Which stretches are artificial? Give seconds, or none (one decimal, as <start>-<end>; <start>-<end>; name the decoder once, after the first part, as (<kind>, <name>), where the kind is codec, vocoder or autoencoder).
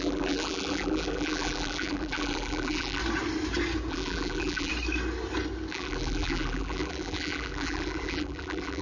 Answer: 0.0-3.0 (vocoder, BigVGAN v2); 3.9-4.7; 5.7-8.8